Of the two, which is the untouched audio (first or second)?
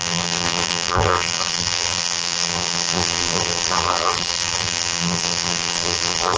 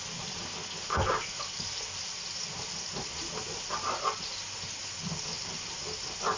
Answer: second